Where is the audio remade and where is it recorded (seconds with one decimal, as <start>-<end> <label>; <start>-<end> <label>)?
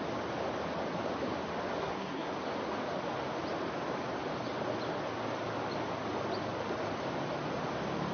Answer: 0.0-1.8 recorded; 1.8-2.3 remade; 2.3-8.1 recorded